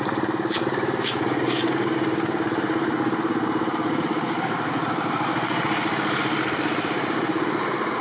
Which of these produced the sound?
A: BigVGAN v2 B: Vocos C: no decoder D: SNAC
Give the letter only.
A